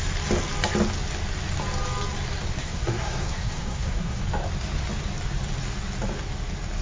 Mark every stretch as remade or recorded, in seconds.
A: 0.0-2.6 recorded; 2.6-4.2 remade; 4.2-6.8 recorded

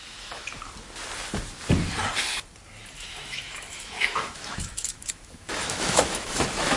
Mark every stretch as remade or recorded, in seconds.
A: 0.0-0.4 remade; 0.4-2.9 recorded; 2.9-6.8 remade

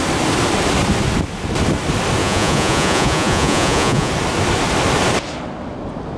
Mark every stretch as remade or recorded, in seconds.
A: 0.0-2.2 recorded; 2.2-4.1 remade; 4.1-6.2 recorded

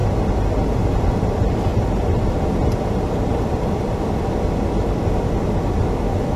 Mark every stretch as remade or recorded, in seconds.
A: 0.0-6.4 recorded

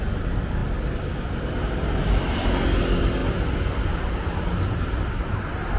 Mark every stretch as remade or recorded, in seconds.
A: 0.0-5.8 recorded

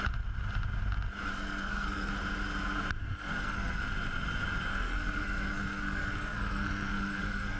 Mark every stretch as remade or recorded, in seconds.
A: 0.0-1.3 recorded; 1.3-2.1 remade; 2.1-3.0 recorded; 3.0-3.8 remade; 3.8-4.7 recorded; 4.7-7.6 remade

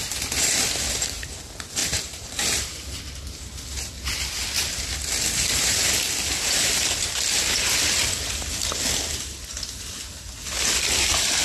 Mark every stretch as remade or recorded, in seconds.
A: 0.0-1.8 recorded; 1.8-3.0 remade; 3.0-11.4 recorded

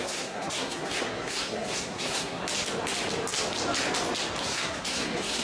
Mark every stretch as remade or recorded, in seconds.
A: 0.0-2.4 remade; 2.4-4.4 recorded; 4.4-5.4 remade